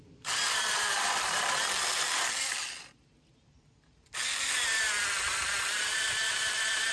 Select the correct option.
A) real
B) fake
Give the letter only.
A